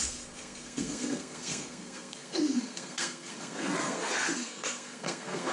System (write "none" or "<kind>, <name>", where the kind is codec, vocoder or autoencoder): codec, SNAC